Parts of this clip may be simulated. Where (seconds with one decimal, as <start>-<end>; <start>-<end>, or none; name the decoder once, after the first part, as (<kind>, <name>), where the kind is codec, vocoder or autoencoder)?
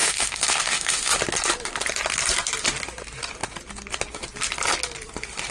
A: 0.0-1.2 (autoencoder, DAC-VAE)